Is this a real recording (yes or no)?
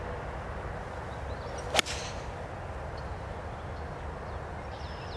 yes